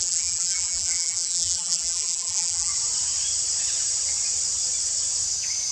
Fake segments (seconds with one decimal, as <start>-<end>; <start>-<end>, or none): 0.0-2.7